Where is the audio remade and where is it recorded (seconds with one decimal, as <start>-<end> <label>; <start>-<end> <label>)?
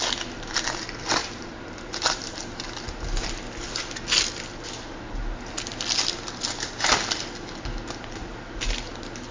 0.0-1.2 recorded; 1.2-2.7 remade; 2.7-9.3 recorded